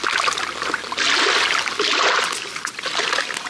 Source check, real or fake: real